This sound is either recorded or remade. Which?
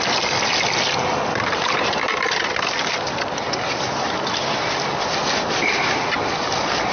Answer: remade